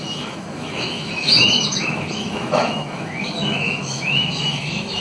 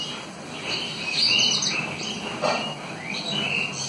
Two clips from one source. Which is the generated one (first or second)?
first